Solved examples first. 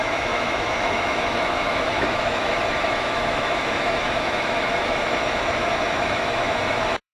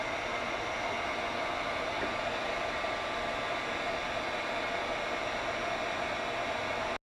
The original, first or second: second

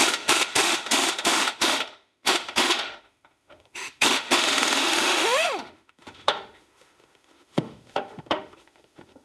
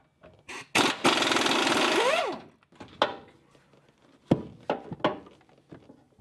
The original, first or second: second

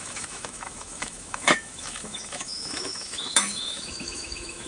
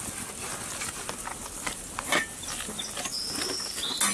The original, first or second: second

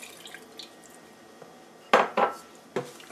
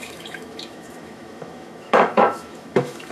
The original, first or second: first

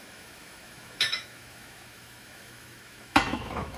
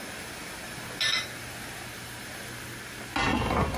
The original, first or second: second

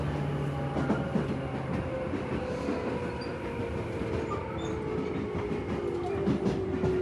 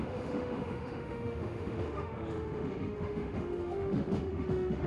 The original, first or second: first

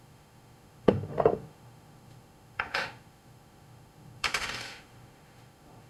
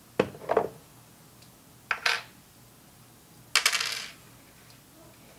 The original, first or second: second